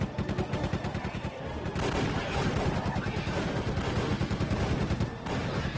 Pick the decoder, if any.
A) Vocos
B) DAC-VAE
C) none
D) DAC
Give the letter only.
C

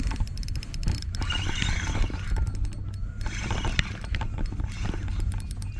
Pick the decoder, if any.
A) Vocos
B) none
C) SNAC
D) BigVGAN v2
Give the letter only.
B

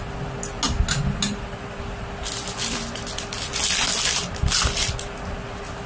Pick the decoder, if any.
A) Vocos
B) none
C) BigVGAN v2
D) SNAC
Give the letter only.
B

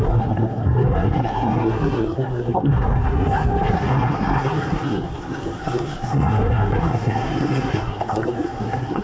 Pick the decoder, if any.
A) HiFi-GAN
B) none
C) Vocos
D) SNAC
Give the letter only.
D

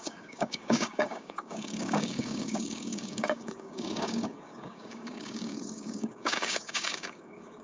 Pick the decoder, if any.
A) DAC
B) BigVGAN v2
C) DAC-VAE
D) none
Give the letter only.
A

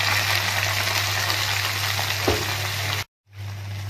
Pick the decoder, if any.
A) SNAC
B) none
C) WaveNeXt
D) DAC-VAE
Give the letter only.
B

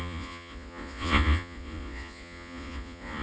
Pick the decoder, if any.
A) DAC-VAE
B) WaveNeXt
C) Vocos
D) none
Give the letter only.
C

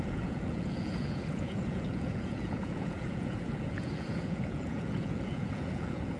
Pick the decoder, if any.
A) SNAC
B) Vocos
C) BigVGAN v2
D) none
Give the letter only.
B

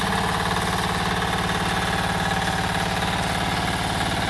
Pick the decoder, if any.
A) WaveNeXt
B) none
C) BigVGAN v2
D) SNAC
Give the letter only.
B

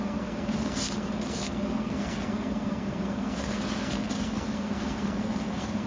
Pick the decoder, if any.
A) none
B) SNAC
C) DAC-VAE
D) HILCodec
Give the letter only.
B